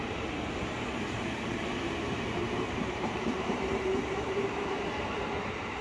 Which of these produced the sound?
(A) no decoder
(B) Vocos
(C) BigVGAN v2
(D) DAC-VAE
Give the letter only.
C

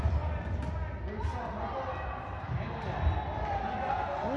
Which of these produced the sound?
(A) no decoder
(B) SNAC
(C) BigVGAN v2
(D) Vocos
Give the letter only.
A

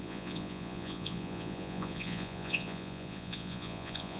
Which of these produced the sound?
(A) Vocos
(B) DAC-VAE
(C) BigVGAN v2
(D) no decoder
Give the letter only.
A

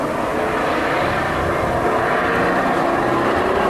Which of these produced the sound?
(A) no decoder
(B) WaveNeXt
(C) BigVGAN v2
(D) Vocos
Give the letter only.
A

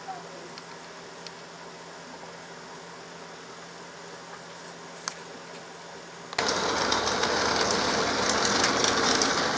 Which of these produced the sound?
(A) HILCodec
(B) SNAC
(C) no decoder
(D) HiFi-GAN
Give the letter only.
C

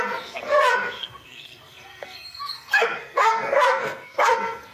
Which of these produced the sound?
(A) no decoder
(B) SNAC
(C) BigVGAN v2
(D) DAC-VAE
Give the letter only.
B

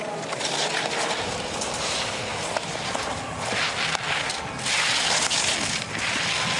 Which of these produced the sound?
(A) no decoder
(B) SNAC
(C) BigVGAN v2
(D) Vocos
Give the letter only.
A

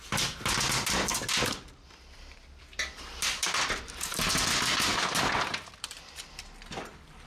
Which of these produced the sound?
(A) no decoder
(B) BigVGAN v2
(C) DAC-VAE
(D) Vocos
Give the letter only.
B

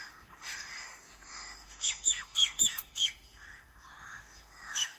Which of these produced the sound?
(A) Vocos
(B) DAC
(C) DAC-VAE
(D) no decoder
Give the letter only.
C